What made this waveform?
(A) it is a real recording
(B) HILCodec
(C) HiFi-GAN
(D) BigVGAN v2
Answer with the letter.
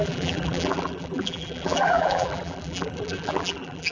D